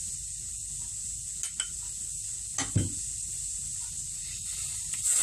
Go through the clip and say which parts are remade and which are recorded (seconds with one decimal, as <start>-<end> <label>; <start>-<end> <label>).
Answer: 0.0-5.2 recorded